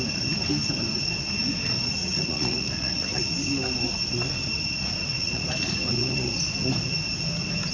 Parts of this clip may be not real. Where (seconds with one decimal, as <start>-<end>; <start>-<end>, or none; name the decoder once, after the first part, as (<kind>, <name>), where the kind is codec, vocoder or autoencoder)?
2.0-3.2 (vocoder, Vocos); 5.0-6.3